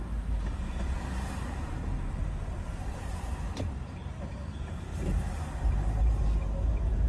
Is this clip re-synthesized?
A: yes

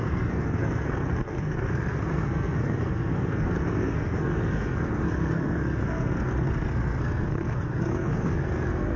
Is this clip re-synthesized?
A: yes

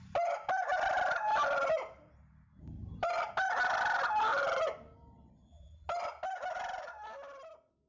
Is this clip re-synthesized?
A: no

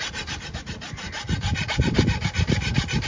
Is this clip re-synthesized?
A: yes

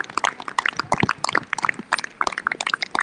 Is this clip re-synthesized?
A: no